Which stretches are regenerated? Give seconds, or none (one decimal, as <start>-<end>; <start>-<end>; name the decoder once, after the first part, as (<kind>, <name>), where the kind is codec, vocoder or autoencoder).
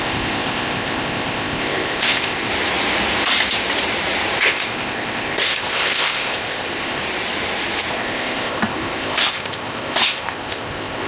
0.0-2.5 (codec, ZipCodec); 4.4-7.0; 7.9-11.1